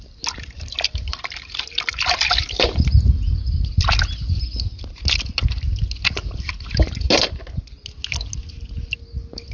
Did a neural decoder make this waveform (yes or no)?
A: no